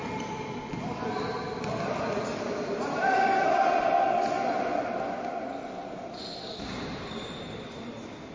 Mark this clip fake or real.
real